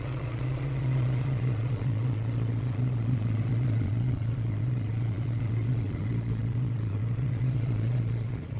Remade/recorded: remade